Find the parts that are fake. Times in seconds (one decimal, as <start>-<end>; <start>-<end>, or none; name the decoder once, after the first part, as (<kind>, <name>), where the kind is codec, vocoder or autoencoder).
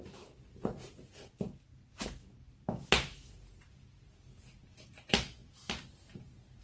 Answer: none